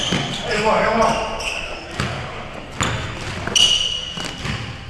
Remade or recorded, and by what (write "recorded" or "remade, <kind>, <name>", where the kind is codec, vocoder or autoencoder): recorded